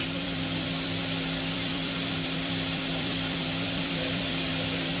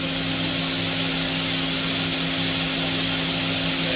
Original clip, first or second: second